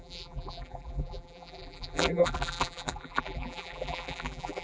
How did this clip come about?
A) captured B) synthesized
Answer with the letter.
B